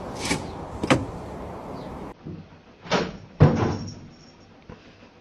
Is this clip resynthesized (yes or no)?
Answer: yes